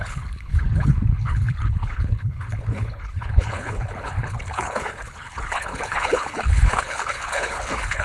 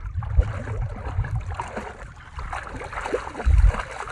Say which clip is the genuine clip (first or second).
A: second